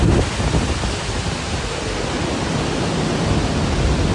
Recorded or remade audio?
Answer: recorded